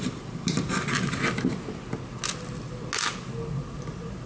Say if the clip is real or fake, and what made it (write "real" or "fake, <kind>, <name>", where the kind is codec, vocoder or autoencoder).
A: real